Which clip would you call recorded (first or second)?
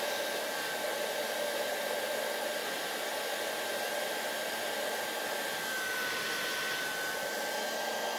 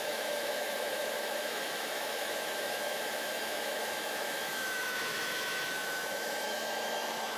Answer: first